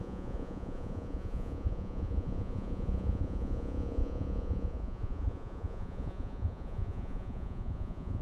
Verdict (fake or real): fake